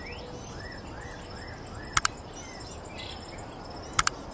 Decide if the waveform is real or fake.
real